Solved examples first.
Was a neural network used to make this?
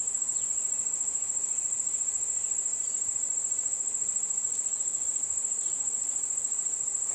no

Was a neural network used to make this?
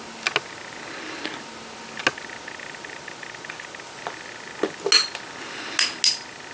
no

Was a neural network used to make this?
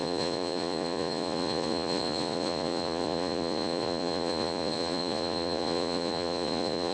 yes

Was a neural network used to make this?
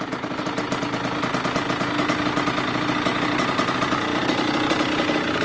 no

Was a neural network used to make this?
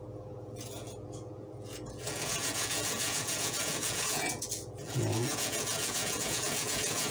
yes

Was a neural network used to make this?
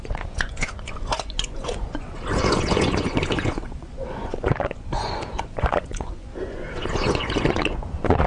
yes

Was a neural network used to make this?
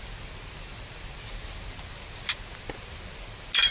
no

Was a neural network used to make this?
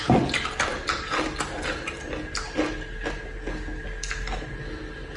no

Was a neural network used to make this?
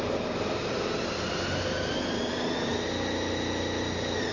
no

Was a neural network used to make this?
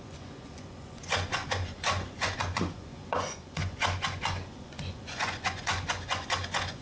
yes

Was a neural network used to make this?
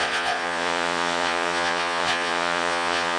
yes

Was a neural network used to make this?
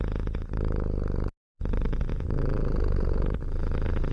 no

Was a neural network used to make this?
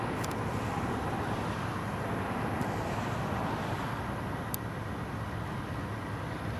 no